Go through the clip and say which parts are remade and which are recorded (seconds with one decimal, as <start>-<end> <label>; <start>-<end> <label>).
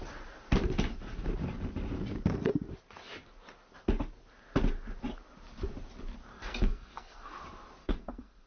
0.0-6.3 recorded; 6.3-7.3 remade; 7.3-7.8 recorded; 7.8-8.5 remade